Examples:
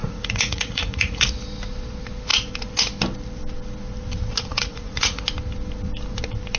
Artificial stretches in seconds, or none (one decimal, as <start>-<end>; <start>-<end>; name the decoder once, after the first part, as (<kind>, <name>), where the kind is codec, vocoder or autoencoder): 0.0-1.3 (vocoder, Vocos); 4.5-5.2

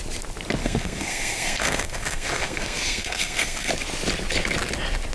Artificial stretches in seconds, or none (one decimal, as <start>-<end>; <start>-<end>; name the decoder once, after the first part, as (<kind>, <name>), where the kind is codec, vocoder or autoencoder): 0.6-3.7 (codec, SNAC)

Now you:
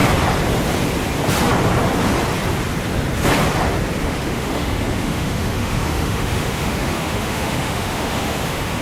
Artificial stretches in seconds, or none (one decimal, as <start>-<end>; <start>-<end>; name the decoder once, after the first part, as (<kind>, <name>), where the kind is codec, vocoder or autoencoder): 4.0-8.8 (autoencoder, DAC-VAE)